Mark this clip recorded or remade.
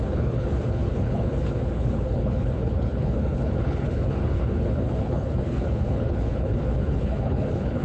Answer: remade